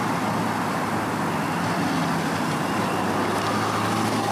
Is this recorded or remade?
recorded